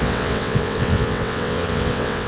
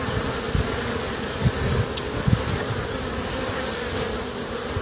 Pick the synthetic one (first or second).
first